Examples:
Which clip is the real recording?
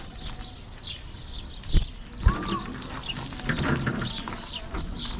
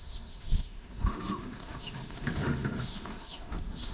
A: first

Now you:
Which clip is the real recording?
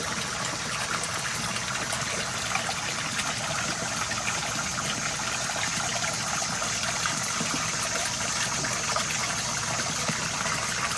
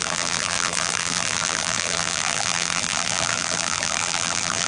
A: first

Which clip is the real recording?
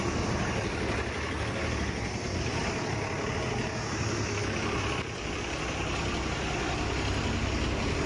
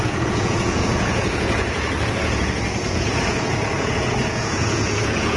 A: first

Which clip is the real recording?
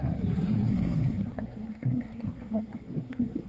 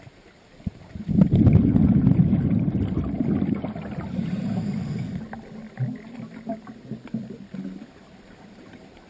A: second